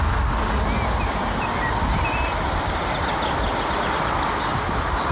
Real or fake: real